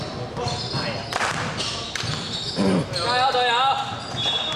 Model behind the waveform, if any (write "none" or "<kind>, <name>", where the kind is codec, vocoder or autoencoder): none